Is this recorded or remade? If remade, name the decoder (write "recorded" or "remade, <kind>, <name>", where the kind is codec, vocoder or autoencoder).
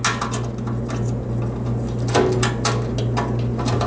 recorded